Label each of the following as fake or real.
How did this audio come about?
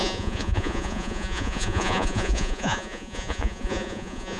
fake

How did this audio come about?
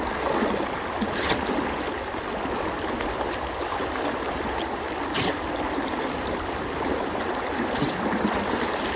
real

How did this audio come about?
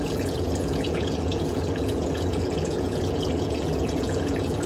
fake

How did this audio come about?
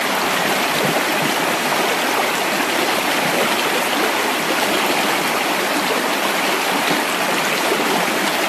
real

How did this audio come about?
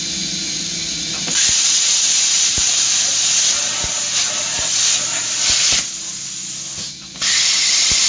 real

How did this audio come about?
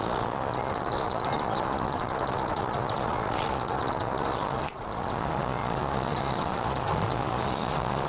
fake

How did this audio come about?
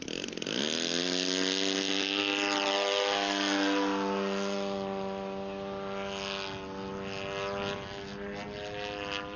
real